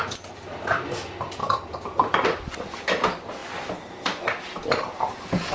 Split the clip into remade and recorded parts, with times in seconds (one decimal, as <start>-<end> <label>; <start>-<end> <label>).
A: 0.0-1.4 recorded; 1.4-2.7 remade; 2.7-3.4 recorded; 3.4-4.4 remade; 4.4-5.5 recorded